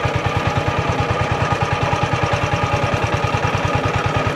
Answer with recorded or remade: remade